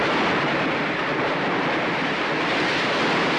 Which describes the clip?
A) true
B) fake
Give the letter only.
A